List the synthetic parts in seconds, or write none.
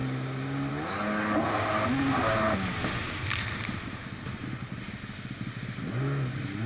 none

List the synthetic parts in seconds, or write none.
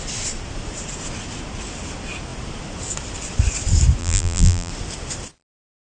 4.0-4.7 (vocoder, BigVGAN v2)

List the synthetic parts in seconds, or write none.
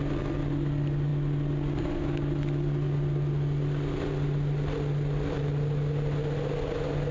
none